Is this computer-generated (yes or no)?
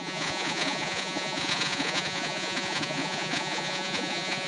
yes